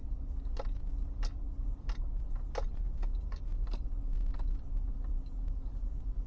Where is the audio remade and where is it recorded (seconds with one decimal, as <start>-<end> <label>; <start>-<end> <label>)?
0.0-6.3 recorded